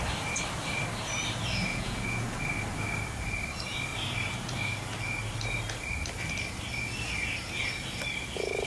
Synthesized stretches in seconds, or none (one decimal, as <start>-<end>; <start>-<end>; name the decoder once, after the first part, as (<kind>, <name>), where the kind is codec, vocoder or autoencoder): 1.7-2.4 (vocoder, Vocos)